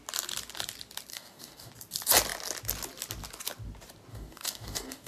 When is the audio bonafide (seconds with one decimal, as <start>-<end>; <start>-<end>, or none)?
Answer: 0.0-1.1; 1.7-4.1